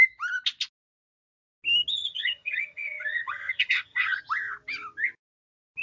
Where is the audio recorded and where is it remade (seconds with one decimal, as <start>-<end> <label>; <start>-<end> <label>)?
0.0-1.9 recorded; 1.9-4.2 remade; 4.2-5.8 recorded